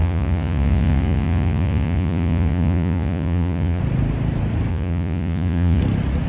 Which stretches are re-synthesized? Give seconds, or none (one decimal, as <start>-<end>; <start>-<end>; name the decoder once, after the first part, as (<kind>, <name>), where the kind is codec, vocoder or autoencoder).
0.0-3.8 (vocoder, Vocos); 4.7-5.8